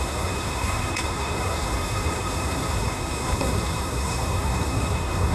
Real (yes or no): no